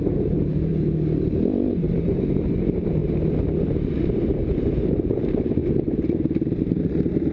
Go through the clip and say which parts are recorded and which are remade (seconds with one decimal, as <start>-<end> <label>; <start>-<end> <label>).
0.0-0.7 remade; 0.7-1.7 recorded; 1.7-3.0 remade; 3.0-4.9 recorded; 4.9-5.6 remade; 5.6-6.8 recorded; 6.8-7.3 remade

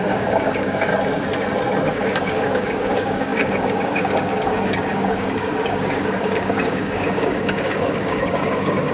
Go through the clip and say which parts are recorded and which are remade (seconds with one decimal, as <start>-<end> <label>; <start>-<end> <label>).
0.0-0.9 remade; 0.9-1.9 recorded; 1.9-8.9 remade